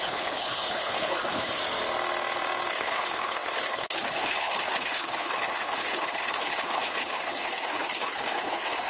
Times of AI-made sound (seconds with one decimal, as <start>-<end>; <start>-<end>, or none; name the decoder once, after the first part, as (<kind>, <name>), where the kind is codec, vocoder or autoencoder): 0.0-1.6 (codec, HILCodec); 2.7-8.9